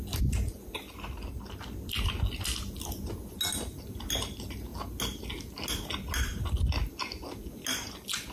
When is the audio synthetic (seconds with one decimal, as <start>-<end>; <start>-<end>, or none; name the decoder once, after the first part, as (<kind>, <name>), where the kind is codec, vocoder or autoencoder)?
none